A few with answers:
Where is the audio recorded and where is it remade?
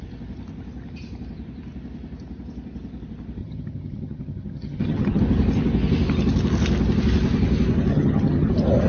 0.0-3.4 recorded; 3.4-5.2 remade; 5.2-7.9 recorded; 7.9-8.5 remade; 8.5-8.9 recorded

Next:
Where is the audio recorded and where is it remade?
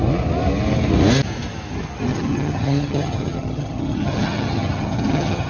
0.0-2.1 recorded; 2.1-5.5 remade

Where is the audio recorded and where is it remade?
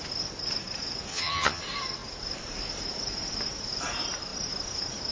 0.0-1.1 recorded; 1.1-1.6 remade; 1.6-5.1 recorded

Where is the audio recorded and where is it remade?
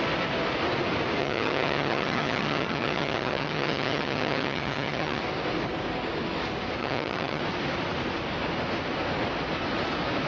0.0-1.2 recorded; 1.2-5.2 remade; 5.2-6.8 recorded; 6.8-7.4 remade; 7.4-10.3 recorded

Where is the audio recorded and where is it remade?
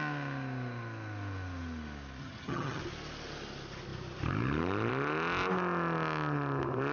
0.0-2.2 recorded; 2.2-2.8 remade; 2.8-6.9 recorded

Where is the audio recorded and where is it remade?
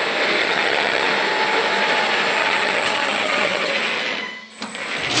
0.0-0.4 recorded; 0.4-1.1 remade; 1.1-2.4 recorded; 2.4-3.7 remade; 3.7-5.2 recorded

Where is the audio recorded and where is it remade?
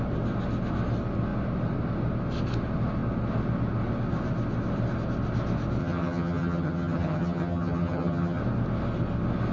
0.0-5.8 recorded; 5.8-8.4 remade; 8.4-9.5 recorded